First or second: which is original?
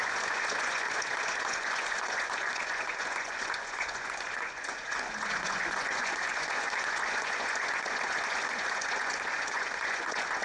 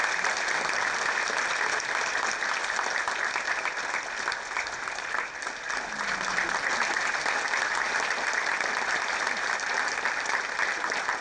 second